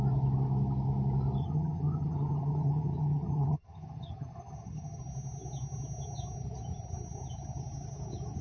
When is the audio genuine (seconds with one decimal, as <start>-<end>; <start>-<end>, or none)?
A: 0.0-1.4; 5.0-8.4